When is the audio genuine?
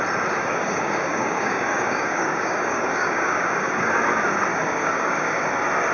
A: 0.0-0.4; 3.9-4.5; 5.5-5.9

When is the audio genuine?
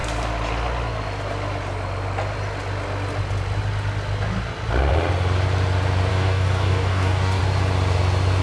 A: 0.0-6.1; 7.4-8.4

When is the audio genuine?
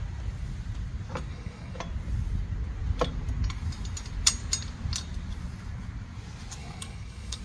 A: 0.0-1.3; 1.8-6.6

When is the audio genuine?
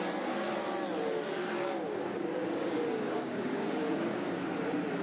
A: 0.0-1.4; 4.4-5.0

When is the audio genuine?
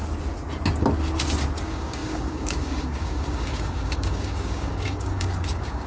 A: 0.0-1.6